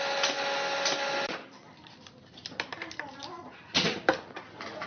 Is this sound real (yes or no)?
yes